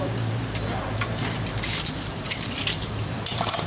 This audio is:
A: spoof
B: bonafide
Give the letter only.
A